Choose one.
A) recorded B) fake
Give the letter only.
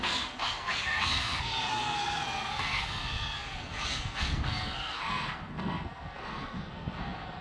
B